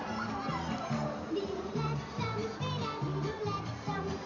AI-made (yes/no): yes